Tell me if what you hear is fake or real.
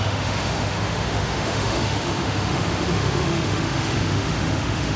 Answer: fake